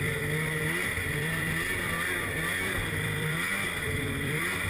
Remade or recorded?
remade